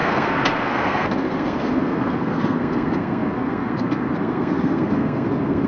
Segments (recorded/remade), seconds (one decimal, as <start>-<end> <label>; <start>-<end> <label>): 0.0-5.7 remade